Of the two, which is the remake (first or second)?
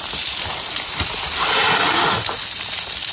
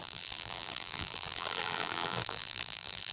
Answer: second